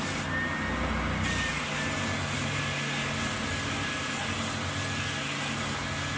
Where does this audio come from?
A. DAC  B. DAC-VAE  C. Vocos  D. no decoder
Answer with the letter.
D